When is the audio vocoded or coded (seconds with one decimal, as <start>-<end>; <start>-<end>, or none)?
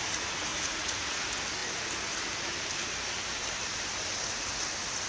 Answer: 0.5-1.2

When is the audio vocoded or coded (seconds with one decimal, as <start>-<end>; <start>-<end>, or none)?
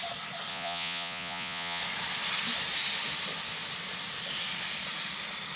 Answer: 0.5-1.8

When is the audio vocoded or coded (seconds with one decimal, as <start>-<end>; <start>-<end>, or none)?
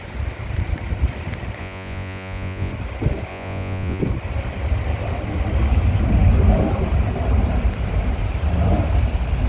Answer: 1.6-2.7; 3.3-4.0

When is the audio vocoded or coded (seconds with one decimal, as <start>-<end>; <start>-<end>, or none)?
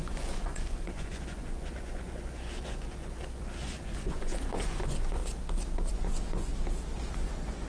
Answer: 0.0-5.2; 5.9-6.5; 7.1-7.7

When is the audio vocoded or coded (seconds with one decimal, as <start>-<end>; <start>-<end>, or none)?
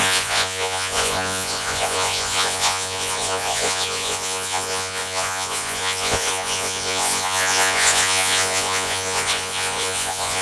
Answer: 0.0-10.4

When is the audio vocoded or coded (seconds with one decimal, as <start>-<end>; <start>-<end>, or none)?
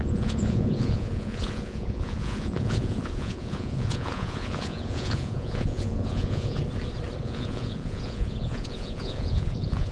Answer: 0.0-6.6; 7.2-9.9